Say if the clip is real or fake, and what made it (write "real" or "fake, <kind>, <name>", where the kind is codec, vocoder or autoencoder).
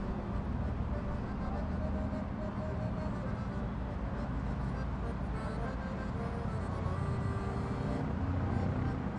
real